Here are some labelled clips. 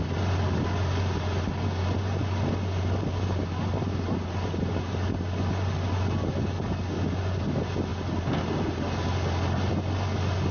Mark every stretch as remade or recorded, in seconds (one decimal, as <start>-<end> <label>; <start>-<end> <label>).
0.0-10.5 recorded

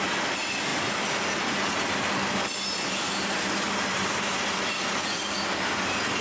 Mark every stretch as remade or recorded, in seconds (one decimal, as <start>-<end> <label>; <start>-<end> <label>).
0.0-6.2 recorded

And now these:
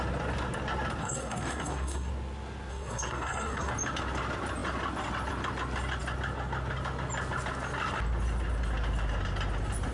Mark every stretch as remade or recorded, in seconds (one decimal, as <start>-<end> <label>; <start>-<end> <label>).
0.0-1.0 recorded; 1.0-2.1 remade; 2.1-2.7 recorded; 2.7-3.7 remade; 3.7-9.9 recorded

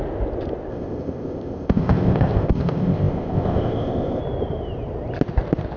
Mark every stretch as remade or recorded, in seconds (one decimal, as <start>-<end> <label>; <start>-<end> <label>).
0.0-0.7 recorded; 0.7-4.2 remade; 4.2-5.8 recorded